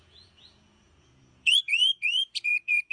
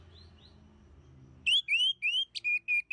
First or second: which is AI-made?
first